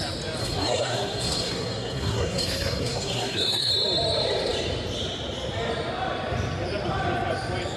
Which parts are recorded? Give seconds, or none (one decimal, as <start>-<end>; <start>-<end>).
0.0-0.4; 3.7-7.8